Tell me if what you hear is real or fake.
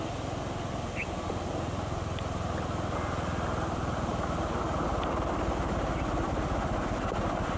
real